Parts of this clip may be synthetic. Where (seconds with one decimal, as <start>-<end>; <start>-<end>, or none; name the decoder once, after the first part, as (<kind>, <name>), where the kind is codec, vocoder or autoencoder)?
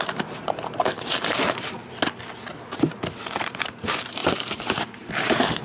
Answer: 0.0-1.8 (vocoder, BigVGAN v2); 3.2-5.6